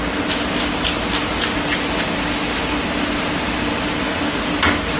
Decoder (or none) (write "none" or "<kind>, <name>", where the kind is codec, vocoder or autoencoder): none